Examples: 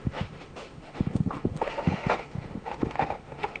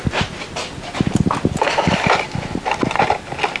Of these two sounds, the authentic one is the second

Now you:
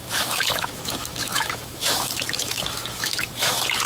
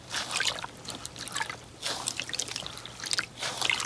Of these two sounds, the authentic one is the second